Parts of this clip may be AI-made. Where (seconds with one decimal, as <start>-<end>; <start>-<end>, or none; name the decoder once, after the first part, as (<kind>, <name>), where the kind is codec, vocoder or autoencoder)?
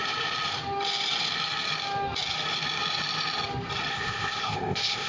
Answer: 3.9-5.1 (codec, ZipCodec)